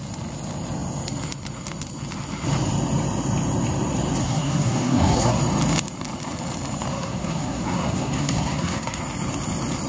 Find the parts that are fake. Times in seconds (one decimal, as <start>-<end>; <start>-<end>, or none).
4.2-5.4; 6.9-9.0